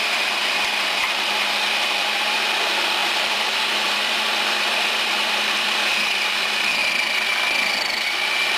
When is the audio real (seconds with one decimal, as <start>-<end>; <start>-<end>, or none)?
6.8-8.0